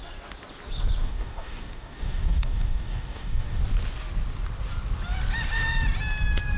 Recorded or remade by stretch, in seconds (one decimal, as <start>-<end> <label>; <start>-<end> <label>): 0.0-1.0 recorded; 1.0-3.6 remade; 3.6-6.6 recorded